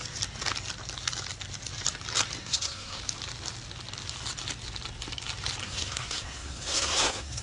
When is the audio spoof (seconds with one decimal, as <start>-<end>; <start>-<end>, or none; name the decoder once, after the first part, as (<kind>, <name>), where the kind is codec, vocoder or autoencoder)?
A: 2.4-3.0 (codec, SNAC); 5.6-7.4